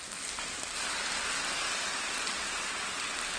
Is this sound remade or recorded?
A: recorded